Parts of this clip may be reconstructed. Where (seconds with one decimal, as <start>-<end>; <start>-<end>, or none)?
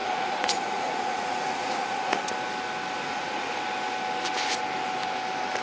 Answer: 0.0-2.2; 3.0-3.6